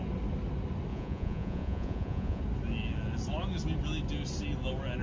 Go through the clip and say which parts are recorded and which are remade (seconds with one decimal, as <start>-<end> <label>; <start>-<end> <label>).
0.0-0.9 recorded; 0.9-2.4 remade; 2.4-5.0 recorded

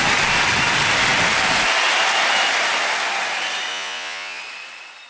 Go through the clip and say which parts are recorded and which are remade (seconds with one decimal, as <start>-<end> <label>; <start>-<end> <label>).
0.0-3.7 recorded; 3.7-4.4 remade; 4.4-5.1 recorded

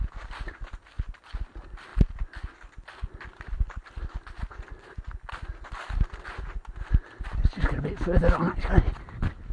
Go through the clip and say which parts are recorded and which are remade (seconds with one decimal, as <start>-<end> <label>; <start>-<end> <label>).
0.0-9.5 recorded

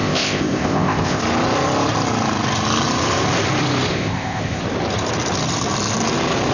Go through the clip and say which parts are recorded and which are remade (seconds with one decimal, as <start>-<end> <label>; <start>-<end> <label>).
0.0-1.2 remade; 1.2-3.9 recorded; 3.9-4.6 remade; 4.6-6.5 recorded

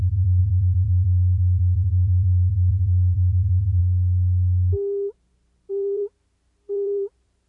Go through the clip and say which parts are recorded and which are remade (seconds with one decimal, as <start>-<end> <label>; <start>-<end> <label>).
0.0-3.8 remade; 3.8-5.7 recorded; 5.7-7.5 remade

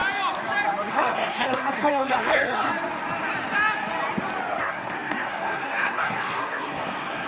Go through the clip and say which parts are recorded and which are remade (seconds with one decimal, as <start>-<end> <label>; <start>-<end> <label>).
0.0-0.9 recorded; 0.9-2.7 remade; 2.7-4.6 recorded; 4.6-7.3 remade

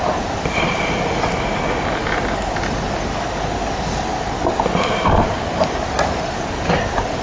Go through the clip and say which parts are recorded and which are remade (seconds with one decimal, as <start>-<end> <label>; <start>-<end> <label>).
0.0-7.2 recorded